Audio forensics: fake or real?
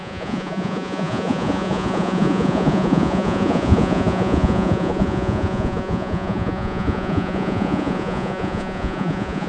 fake